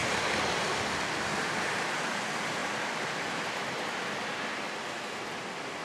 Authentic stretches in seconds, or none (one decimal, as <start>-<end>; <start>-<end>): 2.1-2.6; 4.2-5.8

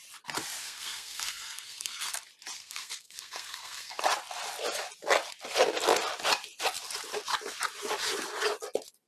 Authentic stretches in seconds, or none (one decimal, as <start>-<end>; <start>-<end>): 0.0-0.6; 2.2-2.6; 4.0-9.1

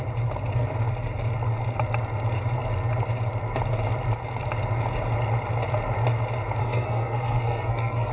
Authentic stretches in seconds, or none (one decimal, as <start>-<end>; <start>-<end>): 0.0-6.6

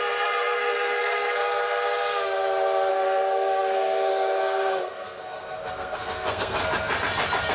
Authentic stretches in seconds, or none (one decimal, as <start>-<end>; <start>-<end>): 1.4-2.9; 6.6-7.5

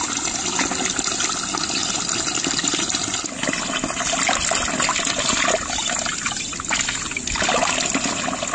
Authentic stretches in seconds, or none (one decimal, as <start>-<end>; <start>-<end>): 0.0-8.5

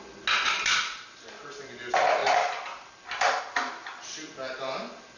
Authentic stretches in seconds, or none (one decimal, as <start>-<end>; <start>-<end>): 0.0-5.2

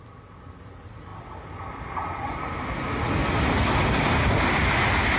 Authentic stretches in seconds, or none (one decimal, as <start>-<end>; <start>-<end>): 0.0-5.2

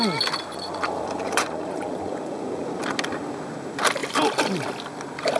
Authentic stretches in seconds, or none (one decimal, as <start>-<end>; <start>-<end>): 0.0-0.5; 2.8-5.4